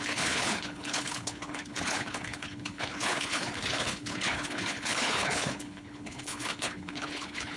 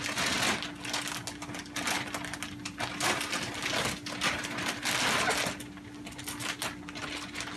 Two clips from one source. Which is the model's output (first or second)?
first